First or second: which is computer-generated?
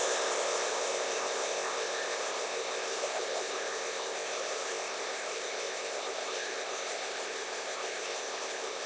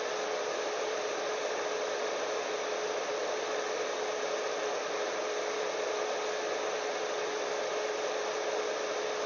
first